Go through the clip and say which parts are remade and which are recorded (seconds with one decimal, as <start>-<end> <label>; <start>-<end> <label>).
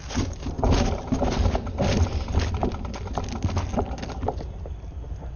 0.0-5.4 recorded